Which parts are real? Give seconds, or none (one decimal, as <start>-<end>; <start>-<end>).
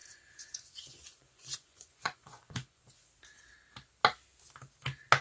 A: 3.1-5.2